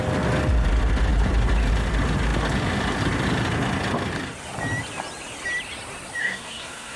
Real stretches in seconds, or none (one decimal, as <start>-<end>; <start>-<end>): 0.0-6.2